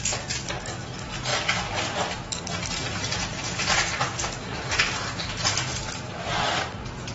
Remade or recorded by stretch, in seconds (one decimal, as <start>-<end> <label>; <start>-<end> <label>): 0.0-1.3 recorded; 1.3-5.6 remade; 5.6-7.1 recorded

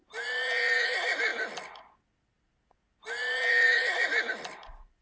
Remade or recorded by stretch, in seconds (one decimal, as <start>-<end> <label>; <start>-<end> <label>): 0.0-5.0 recorded

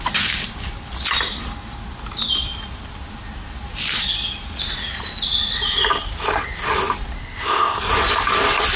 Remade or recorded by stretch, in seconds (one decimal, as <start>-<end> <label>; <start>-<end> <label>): 0.0-7.2 recorded; 7.2-7.8 remade; 7.8-8.8 recorded

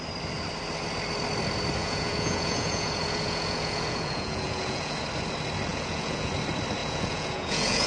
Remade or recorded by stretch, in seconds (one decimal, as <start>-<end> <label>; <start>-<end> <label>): 0.0-1.8 recorded; 1.8-5.0 remade; 5.0-5.7 recorded; 5.7-6.3 remade; 6.3-6.8 recorded; 6.8-7.9 remade

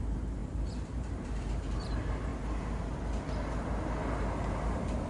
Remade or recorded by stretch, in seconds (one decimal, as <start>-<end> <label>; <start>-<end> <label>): 0.0-2.3 remade; 2.3-4.4 recorded; 4.4-5.1 remade

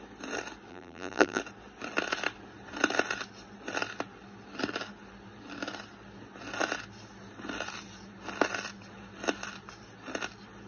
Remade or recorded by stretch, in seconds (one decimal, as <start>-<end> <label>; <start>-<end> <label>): 0.0-0.7 recorded; 0.7-1.4 remade; 1.4-10.7 recorded

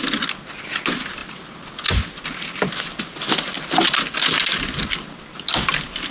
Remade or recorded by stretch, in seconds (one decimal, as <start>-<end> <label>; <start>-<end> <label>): 0.0-6.1 recorded